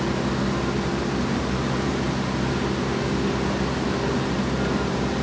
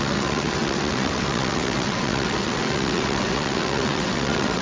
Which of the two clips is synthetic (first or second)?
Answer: second